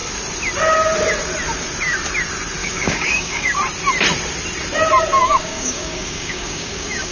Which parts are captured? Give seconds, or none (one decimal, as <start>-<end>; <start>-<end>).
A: 0.0-2.6; 3.5-5.2